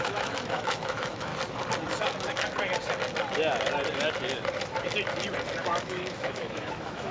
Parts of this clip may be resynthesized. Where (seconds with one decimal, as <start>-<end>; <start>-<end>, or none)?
0.0-1.3; 5.6-7.1